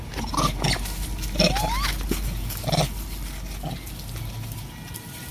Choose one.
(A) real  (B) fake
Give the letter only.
A